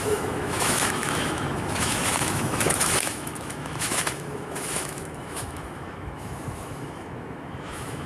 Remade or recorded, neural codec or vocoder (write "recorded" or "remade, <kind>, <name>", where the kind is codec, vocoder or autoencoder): remade, autoencoder, DAC-VAE